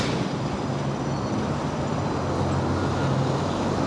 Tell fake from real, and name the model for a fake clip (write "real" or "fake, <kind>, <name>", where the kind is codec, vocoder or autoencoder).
real